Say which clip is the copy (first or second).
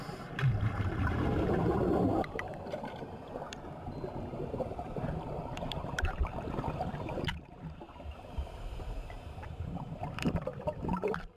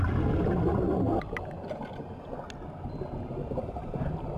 first